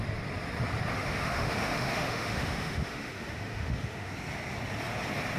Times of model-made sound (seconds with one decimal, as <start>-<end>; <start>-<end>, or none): 0.9-4.1

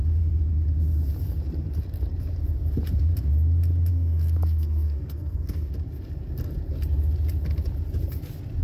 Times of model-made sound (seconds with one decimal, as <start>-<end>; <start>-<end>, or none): 3.9-5.7